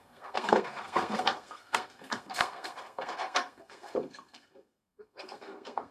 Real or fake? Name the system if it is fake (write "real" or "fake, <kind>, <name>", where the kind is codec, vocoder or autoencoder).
fake, codec, SNAC